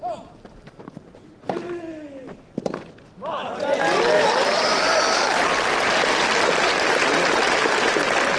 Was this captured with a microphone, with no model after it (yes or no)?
yes